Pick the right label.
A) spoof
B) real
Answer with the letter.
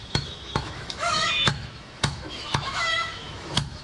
A